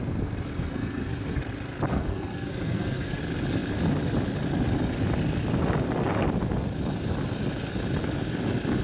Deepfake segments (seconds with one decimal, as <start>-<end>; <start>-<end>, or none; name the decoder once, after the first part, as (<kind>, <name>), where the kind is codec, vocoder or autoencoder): 0.5-1.4 (codec, SNAC); 1.9-3.2